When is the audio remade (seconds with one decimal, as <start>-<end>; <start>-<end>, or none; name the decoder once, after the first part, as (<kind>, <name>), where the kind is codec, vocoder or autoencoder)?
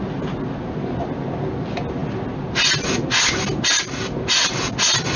none